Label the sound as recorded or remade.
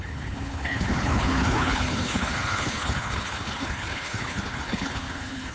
remade